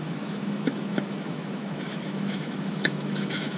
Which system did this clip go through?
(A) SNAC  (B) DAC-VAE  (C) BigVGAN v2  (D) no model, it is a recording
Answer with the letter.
B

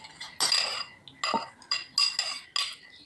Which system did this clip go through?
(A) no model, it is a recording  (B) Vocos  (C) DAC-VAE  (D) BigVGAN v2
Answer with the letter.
A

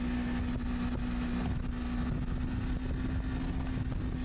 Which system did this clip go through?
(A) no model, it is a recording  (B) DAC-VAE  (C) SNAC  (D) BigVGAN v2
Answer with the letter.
A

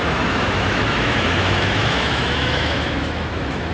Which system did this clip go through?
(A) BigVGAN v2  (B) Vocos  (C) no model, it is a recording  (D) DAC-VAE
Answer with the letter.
D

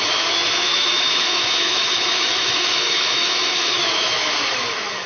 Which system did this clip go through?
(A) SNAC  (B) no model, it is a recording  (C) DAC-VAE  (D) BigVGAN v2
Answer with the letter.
C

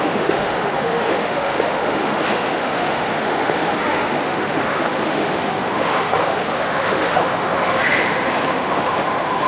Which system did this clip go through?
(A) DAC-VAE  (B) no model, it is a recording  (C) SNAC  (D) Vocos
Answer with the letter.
A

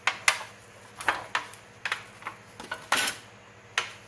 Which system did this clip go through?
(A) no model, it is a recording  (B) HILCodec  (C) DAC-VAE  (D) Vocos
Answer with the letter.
A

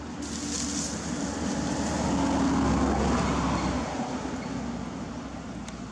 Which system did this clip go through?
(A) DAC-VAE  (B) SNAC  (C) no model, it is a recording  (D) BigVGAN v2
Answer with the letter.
C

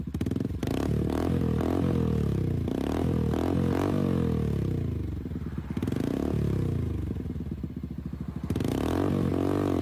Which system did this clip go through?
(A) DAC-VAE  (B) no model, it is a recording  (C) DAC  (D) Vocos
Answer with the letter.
B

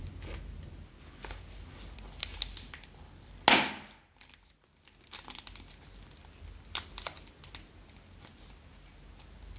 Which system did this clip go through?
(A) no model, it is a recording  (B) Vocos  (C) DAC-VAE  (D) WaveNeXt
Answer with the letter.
A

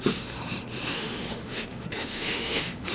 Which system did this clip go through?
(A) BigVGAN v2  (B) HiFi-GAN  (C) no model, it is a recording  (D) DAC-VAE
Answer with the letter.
D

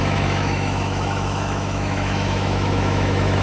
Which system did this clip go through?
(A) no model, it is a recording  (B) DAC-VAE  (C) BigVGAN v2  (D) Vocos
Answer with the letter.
B